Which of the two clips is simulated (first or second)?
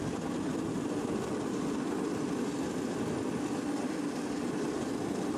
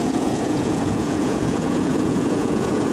second